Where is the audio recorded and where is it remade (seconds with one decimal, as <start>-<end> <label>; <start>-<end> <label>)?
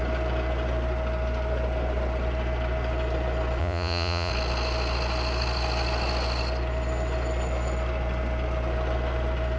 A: 0.0-3.6 recorded; 3.6-4.3 remade; 4.3-9.6 recorded